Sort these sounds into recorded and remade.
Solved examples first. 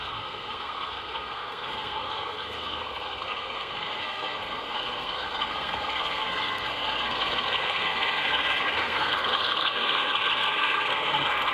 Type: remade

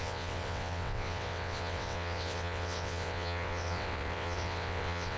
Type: remade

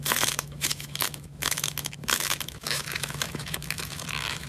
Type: remade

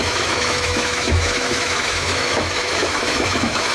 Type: remade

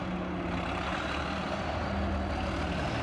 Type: recorded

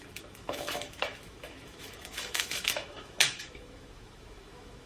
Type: remade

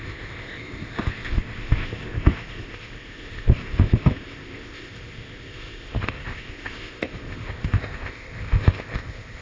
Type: remade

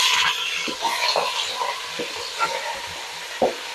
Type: recorded